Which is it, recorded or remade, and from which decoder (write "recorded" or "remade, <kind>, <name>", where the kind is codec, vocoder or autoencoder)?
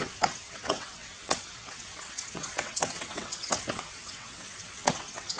remade, vocoder, WaveNeXt